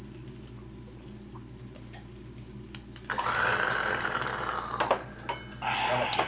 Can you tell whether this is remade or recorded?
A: recorded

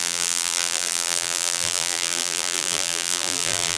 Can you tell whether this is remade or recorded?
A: remade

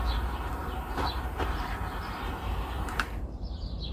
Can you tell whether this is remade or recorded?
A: remade